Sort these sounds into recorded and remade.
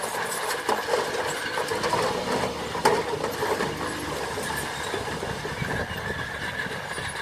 recorded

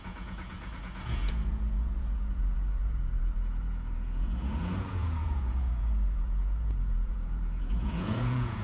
remade